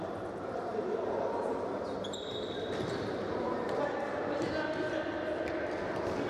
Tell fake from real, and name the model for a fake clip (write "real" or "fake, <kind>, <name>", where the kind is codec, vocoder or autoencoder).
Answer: real